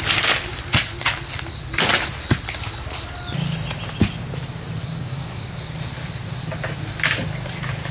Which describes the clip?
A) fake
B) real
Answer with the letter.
B